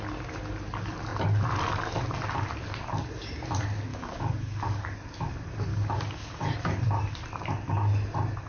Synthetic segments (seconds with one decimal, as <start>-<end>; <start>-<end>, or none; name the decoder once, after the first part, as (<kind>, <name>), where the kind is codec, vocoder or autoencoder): 3.9-4.8 (codec, DAC); 5.7-6.4

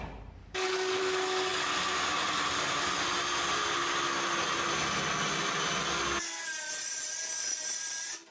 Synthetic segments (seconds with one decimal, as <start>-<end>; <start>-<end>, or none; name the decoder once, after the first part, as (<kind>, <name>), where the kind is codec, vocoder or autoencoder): 0.4-1.0 (codec, DAC)

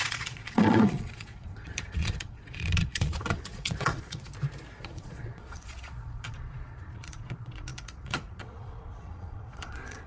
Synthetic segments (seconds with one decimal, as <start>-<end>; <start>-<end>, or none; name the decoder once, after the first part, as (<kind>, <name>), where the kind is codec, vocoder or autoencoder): 0.0-4.3 (vocoder, Vocos); 4.8-10.1

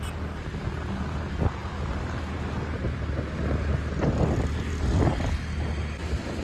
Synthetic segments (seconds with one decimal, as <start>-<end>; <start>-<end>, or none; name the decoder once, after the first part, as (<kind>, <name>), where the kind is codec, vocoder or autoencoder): none

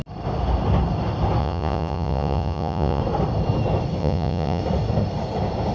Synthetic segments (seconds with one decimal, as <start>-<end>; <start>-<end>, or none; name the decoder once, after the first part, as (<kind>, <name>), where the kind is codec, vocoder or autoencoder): 1.4-3.0 (vocoder, Vocos); 4.0-4.6

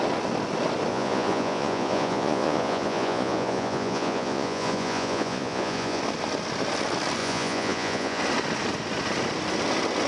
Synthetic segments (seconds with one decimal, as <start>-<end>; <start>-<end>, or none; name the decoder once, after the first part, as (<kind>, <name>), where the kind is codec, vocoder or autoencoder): 0.9-6.0 (vocoder, Vocos); 7.2-8.2

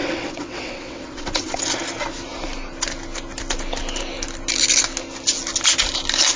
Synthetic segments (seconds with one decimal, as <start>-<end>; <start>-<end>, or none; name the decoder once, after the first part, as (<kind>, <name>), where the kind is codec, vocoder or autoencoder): 0.0-1.6 (vocoder, WaveNeXt)

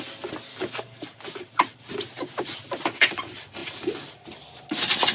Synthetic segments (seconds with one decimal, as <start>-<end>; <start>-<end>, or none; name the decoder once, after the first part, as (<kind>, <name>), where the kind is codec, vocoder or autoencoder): 0.5-1.2 (codec, DAC)